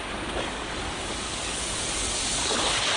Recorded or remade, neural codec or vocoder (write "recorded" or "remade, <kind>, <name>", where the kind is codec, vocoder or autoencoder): remade, codec, DAC